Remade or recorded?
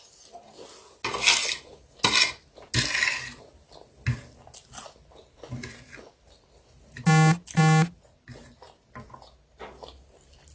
recorded